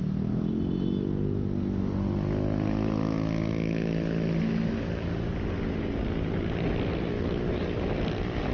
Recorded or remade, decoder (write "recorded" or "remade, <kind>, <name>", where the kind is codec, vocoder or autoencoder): recorded